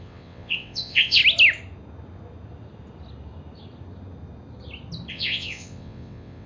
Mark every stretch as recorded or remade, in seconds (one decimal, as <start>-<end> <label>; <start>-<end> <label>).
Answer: 0.0-1.2 remade; 1.2-5.1 recorded; 5.1-6.5 remade